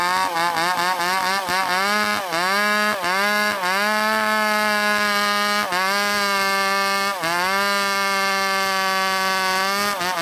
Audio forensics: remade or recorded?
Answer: recorded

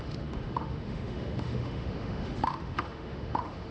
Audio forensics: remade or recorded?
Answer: remade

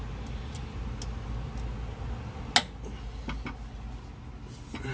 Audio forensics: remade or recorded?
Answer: recorded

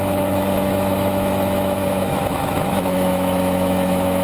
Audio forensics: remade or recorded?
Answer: remade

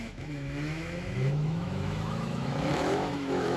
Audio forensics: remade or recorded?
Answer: remade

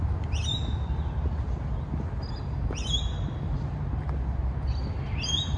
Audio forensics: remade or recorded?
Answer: recorded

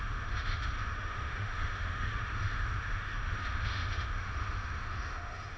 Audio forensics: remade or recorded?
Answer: remade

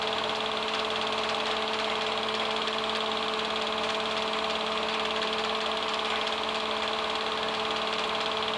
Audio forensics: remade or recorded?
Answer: recorded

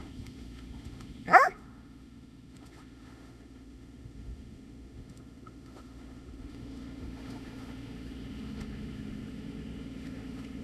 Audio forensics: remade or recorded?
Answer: remade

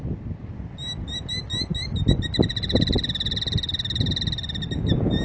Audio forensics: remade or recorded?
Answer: recorded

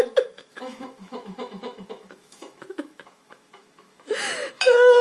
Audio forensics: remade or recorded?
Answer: remade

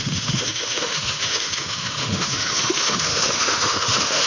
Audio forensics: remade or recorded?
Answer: remade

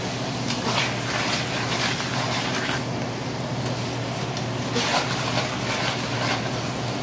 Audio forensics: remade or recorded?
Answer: recorded